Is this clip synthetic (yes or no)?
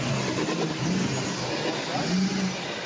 no